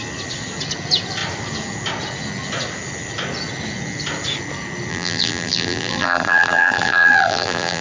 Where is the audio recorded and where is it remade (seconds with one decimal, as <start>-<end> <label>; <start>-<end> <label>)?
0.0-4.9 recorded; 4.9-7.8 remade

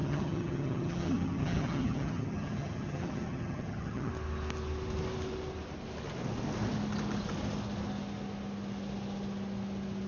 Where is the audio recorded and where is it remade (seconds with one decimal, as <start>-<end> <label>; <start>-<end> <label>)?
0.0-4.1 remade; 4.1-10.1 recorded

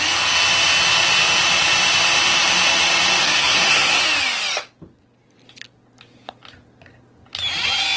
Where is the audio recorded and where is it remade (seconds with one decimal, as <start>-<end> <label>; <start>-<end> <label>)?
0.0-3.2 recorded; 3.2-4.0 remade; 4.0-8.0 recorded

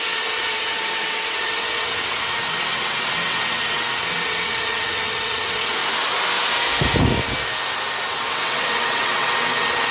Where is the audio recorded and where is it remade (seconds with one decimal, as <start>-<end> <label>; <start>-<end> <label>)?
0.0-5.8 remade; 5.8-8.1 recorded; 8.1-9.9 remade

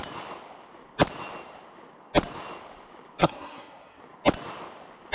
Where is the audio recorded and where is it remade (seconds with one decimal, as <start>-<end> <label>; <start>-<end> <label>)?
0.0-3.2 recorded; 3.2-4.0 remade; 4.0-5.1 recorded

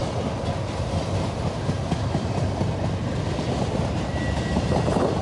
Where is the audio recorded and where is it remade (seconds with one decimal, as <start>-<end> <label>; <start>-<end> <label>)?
0.0-5.2 recorded

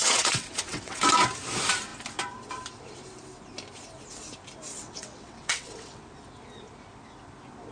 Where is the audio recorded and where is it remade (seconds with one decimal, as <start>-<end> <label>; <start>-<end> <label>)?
0.0-1.0 remade; 1.0-4.7 recorded; 4.7-6.0 remade; 6.0-7.7 recorded

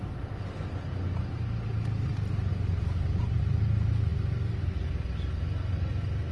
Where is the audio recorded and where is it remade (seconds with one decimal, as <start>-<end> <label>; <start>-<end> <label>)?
0.0-6.3 recorded